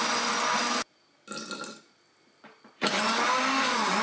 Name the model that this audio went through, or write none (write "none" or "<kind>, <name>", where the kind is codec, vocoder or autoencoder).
none